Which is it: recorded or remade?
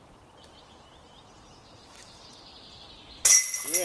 recorded